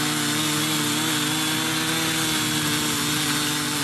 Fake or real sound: real